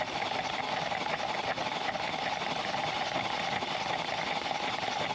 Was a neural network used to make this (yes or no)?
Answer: no